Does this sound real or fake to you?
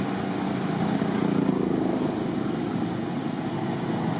real